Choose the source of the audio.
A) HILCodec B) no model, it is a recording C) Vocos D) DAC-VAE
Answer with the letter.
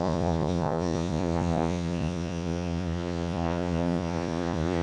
C